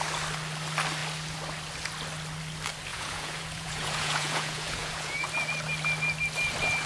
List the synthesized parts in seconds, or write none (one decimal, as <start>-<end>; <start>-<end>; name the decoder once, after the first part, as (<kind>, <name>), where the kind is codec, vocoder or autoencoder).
2.9-5.3 (vocoder, Vocos)